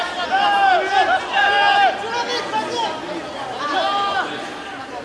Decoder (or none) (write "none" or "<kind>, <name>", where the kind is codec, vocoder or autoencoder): none